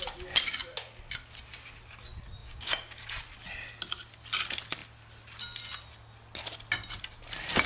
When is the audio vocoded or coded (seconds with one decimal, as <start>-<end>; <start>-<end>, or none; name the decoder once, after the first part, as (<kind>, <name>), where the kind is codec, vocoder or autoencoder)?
2.4-3.1 (codec, DAC)